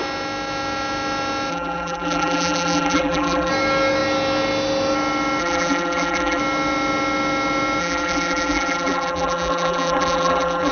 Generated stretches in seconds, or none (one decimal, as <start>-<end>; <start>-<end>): 1.5-3.5; 5.4-6.4; 7.8-10.7

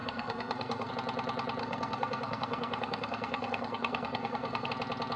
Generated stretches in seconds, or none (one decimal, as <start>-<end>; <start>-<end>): 0.0-0.9; 1.6-4.7

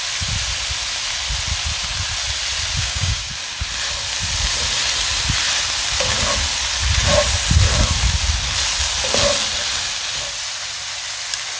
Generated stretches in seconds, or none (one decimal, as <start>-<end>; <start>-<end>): 2.8-3.3

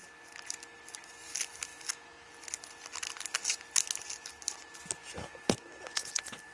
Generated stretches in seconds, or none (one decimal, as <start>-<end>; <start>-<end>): 1.7-2.3; 5.0-6.1